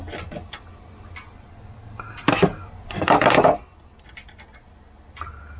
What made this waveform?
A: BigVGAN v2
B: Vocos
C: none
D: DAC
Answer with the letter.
C